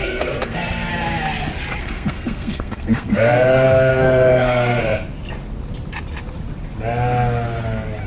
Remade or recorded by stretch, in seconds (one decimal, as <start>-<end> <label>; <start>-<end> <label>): 0.0-0.9 remade; 0.9-1.8 recorded; 1.8-4.9 remade; 4.9-8.1 recorded